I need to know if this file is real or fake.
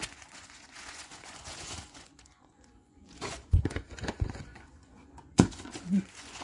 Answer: fake